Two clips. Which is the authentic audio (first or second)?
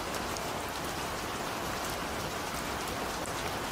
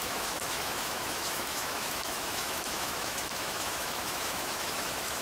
first